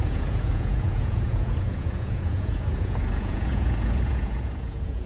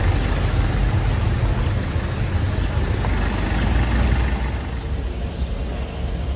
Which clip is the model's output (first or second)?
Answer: first